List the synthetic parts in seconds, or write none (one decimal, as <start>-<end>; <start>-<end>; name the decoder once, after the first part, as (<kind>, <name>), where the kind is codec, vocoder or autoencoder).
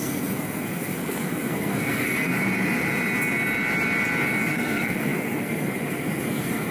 0.0-2.3 (codec, SNAC); 4.5-6.7